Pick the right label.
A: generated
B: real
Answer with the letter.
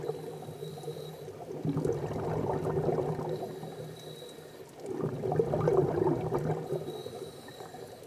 B